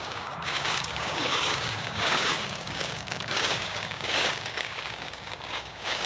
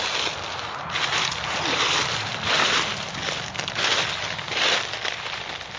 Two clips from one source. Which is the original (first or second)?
second